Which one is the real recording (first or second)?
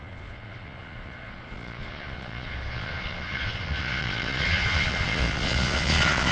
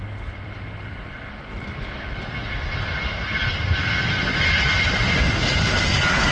second